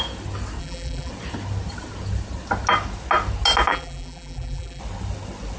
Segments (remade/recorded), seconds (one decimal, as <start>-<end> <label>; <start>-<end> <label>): 0.0-0.6 recorded; 0.6-1.1 remade; 1.1-3.7 recorded; 3.7-4.8 remade; 4.8-5.6 recorded